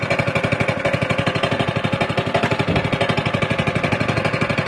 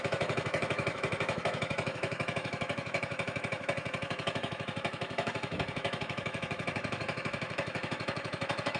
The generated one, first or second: second